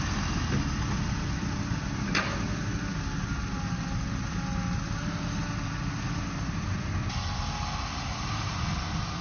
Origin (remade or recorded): recorded